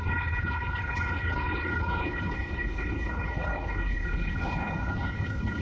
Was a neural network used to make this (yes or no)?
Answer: yes